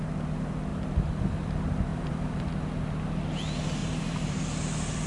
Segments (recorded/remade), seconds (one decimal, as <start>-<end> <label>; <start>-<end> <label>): 0.0-0.7 recorded; 0.7-1.2 remade; 1.2-1.9 recorded; 1.9-2.5 remade; 2.5-3.8 recorded; 3.8-4.4 remade; 4.4-5.1 recorded